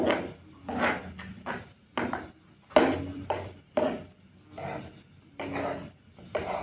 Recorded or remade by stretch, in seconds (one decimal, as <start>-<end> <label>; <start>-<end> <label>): 0.0-3.1 recorded; 3.1-3.6 remade; 3.6-6.6 recorded